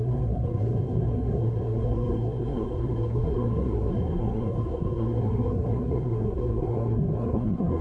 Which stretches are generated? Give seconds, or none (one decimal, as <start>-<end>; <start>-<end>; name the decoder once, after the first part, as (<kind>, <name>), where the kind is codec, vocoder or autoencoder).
0.0-7.8 (codec, SNAC)